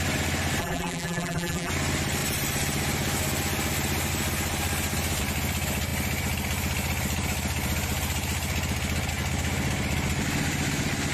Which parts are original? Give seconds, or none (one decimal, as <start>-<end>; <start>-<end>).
0.0-0.6; 1.7-11.1